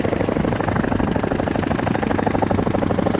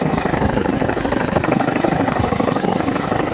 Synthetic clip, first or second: second